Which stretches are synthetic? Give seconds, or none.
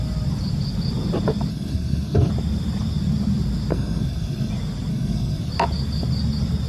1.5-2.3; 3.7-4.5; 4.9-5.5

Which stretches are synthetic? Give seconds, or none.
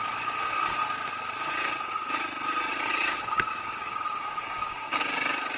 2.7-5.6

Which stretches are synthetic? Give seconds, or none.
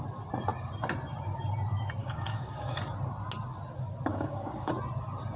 2.0-2.8; 4.1-4.7